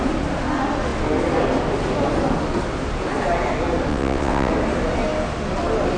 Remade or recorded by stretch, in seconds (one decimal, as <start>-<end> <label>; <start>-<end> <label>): 0.0-3.9 recorded; 3.9-4.5 remade; 4.5-6.0 recorded